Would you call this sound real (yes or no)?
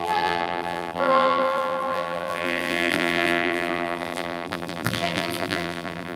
no